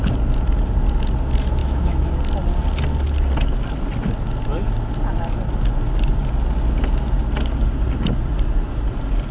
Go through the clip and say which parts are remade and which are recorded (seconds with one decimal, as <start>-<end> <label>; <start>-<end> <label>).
0.0-1.6 recorded; 1.6-2.2 remade; 2.2-9.3 recorded